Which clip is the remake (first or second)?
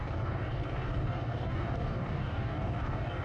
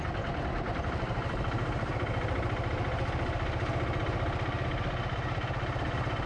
first